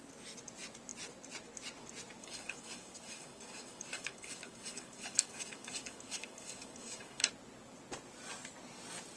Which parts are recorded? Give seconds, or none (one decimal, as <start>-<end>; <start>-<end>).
0.0-2.2; 7.3-9.2